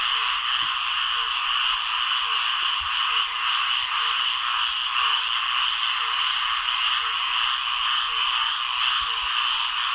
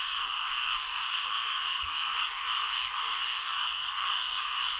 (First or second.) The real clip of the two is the first